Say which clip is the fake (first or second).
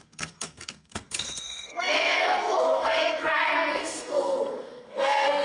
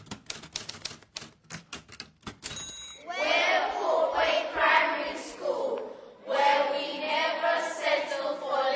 first